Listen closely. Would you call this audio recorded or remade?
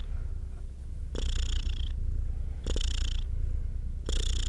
recorded